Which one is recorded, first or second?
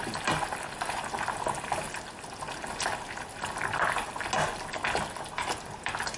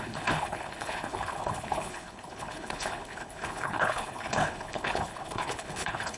first